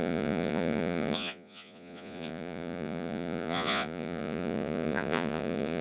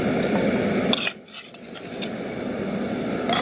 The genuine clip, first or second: second